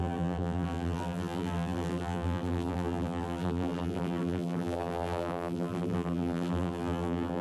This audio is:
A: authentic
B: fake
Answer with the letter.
B